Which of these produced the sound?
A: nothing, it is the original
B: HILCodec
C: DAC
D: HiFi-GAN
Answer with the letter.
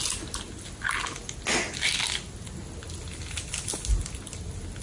A